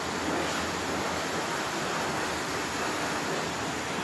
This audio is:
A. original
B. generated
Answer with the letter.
A